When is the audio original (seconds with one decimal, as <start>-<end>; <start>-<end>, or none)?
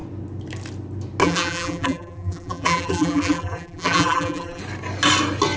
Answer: 0.0-1.2; 4.6-5.6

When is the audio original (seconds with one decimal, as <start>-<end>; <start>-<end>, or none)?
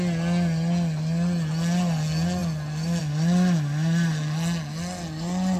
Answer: 0.0-5.6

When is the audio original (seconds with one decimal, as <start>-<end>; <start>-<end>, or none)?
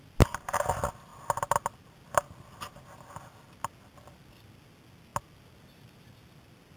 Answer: 0.0-6.8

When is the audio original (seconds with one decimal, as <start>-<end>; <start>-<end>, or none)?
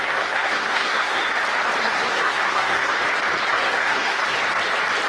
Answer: 1.2-1.8; 2.9-3.5; 4.2-5.1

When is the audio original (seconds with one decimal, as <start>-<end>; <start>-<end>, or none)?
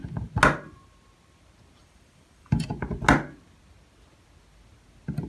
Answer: 0.0-1.8; 2.7-5.3